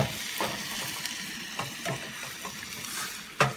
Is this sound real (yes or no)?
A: yes